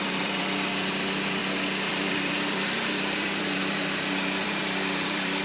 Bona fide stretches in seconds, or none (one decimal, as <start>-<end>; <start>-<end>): 1.4-1.9

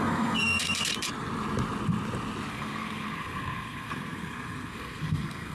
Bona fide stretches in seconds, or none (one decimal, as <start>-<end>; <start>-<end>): 0.9-2.5

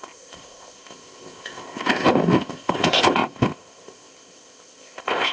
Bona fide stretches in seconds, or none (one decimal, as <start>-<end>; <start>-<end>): none

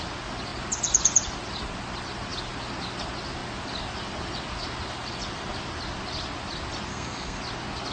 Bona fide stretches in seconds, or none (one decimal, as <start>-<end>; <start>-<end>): 0.0-6.9; 7.4-7.9

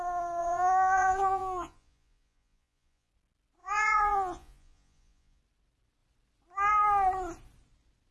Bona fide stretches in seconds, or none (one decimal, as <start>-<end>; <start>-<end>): 0.0-0.4; 3.1-3.6; 5.4-8.1

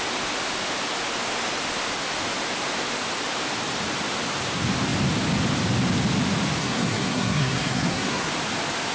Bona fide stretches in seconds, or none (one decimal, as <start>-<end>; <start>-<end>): 0.0-6.6; 8.3-8.9

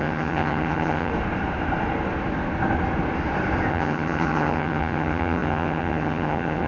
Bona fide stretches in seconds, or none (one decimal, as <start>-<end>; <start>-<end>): 1.1-3.7

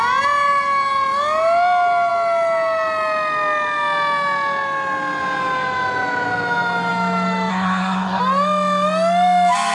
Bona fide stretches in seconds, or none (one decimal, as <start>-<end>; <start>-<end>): 0.0-7.5; 8.2-9.7